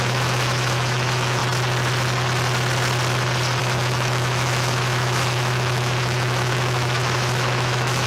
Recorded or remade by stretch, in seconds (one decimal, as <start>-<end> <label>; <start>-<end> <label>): 0.0-1.4 remade; 1.4-3.6 recorded; 3.6-8.1 remade